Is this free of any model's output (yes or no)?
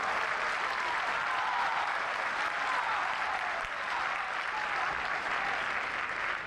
yes